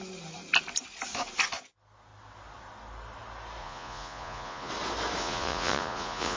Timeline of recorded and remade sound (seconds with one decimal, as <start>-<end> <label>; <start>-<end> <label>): 0.0-3.6 recorded; 3.6-4.7 remade; 4.7-5.2 recorded; 5.2-6.4 remade

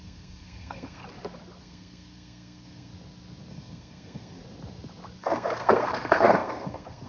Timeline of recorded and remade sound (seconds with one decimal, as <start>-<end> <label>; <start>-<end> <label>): 0.0-1.0 remade; 1.0-1.6 recorded; 1.6-2.9 remade; 2.9-3.5 recorded; 3.5-4.4 remade; 4.4-5.2 recorded; 5.2-7.1 remade

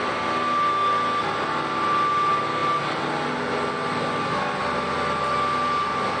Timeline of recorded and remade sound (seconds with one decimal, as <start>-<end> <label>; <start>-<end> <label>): 0.0-6.2 recorded

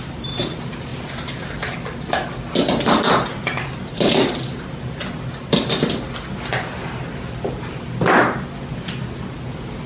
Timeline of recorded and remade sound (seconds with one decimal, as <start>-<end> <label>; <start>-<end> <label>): 0.0-5.0 recorded; 5.0-6.5 remade; 6.5-9.9 recorded

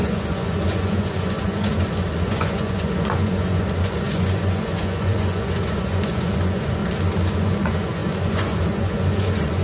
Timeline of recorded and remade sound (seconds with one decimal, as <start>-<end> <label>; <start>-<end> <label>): 0.0-6.8 remade; 6.8-7.3 recorded; 7.3-9.6 remade